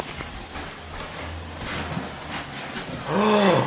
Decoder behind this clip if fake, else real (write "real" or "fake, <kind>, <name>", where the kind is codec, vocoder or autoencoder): real